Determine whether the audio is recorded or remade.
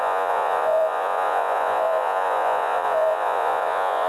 remade